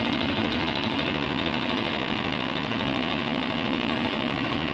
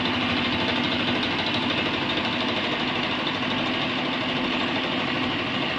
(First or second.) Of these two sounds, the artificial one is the first